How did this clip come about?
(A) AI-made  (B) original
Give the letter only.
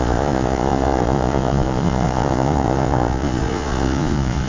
A